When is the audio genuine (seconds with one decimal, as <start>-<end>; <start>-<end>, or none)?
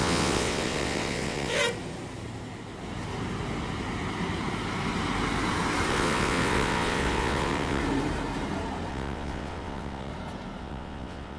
1.6-5.9; 7.8-8.9; 10.1-10.6